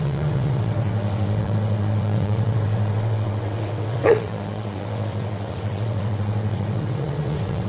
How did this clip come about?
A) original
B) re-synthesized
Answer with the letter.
B